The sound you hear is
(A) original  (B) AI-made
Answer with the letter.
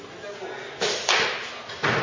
A